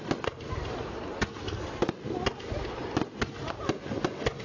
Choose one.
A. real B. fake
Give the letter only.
A